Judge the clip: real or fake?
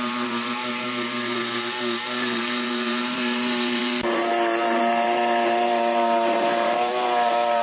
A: fake